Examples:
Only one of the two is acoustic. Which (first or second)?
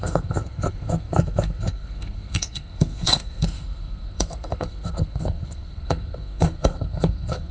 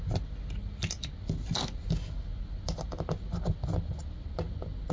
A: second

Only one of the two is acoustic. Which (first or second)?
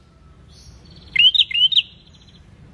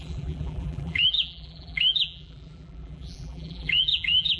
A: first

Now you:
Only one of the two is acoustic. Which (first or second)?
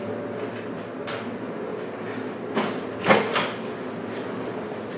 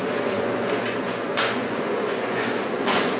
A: first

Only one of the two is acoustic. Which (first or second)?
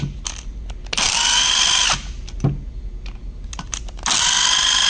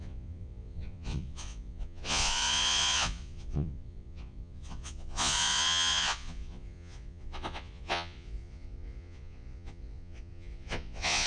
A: first